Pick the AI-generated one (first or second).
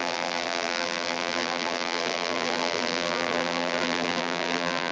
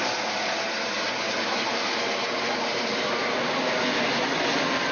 first